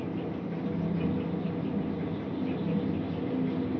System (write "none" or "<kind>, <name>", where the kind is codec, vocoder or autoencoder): none